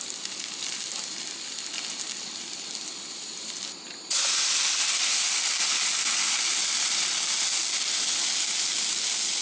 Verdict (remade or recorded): recorded